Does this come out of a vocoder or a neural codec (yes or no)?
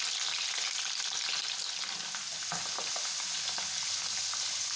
no